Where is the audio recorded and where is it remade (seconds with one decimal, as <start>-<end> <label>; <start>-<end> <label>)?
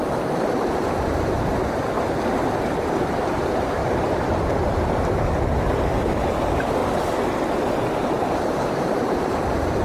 0.0-1.5 remade; 1.5-2.6 recorded; 2.6-3.8 remade; 3.8-6.2 recorded; 6.2-6.8 remade; 6.8-7.7 recorded; 7.7-9.8 remade